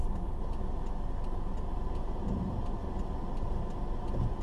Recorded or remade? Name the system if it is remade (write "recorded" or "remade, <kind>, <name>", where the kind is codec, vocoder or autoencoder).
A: recorded